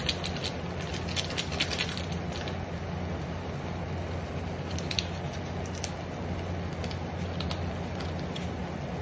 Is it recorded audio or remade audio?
recorded